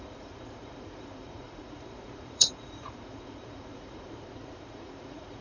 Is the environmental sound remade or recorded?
remade